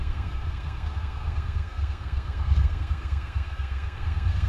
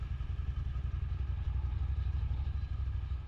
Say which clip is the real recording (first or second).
second